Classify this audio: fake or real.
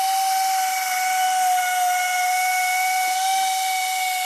real